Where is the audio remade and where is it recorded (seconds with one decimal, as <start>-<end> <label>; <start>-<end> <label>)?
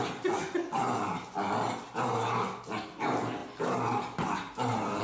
0.0-5.0 recorded